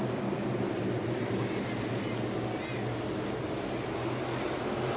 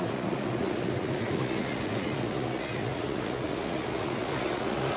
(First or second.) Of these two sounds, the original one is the first